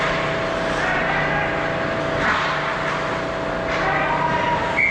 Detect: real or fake real